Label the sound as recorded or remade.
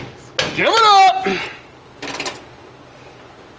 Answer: recorded